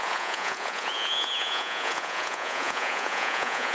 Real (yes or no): no